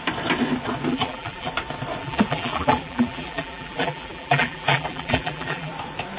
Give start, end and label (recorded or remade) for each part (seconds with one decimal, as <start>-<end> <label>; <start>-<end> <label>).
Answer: 0.0-0.9 recorded; 0.9-1.5 remade; 1.5-2.0 recorded; 2.0-5.7 remade; 5.7-6.2 recorded